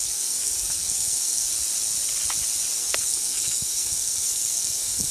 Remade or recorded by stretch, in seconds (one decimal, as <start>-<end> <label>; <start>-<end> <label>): 0.0-1.5 remade; 1.5-2.8 recorded; 2.8-5.1 remade